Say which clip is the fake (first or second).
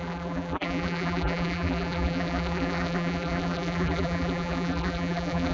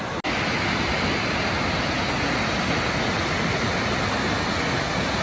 first